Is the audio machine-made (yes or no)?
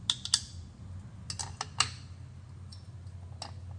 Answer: no